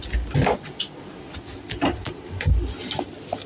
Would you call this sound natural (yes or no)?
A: yes